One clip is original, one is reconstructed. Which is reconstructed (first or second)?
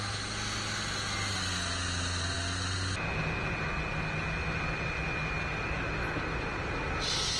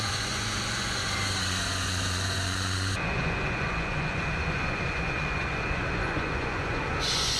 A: second